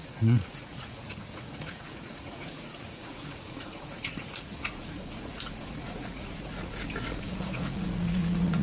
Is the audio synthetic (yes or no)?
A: yes